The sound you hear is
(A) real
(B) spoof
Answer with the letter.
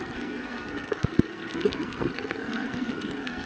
B